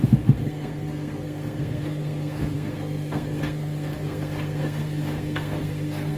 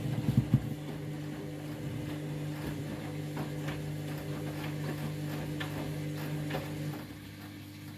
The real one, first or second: second